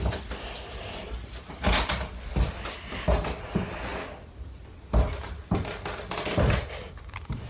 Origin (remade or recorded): recorded